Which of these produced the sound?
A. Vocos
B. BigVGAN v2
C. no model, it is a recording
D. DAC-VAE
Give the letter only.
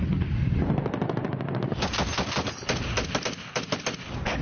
C